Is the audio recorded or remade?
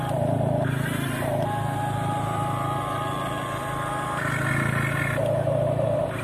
recorded